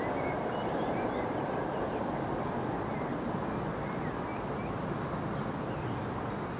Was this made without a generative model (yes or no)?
yes